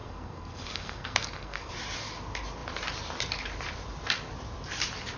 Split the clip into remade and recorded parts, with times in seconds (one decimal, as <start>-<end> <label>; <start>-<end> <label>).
0.0-1.7 remade; 1.7-5.2 recorded